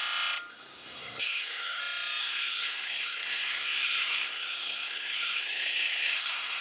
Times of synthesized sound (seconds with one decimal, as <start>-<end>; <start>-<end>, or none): 0.5-1.8; 2.2-6.6